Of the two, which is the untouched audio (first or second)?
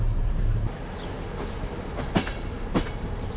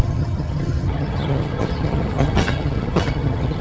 first